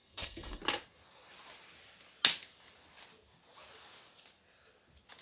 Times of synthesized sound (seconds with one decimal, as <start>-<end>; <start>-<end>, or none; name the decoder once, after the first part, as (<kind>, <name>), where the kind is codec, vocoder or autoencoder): 0.0-0.6 (codec, SNAC)